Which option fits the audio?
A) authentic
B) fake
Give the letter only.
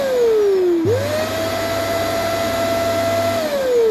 A